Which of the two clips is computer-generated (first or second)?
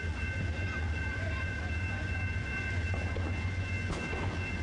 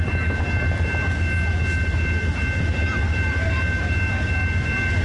first